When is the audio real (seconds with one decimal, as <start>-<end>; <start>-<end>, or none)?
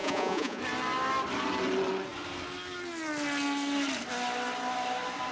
0.6-5.3